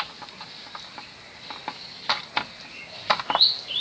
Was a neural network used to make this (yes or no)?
no